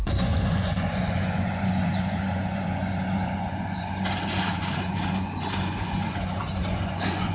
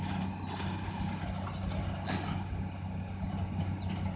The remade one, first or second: first